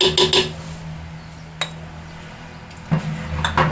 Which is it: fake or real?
real